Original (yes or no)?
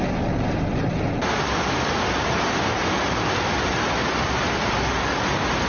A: yes